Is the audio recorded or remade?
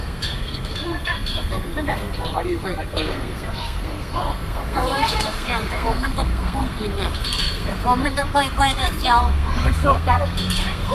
remade